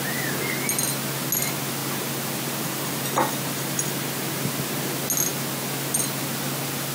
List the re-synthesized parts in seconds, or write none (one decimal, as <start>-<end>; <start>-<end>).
1.8-3.4